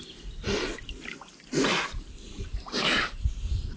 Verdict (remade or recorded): recorded